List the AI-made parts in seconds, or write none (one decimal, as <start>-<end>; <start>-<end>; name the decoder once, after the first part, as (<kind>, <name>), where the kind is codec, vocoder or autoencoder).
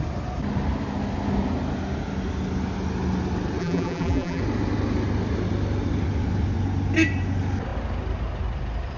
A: 3.6-4.4 (vocoder, BigVGAN v2)